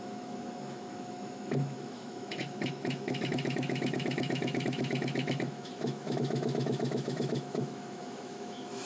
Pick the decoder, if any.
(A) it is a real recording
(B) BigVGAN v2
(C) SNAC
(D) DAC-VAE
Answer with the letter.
D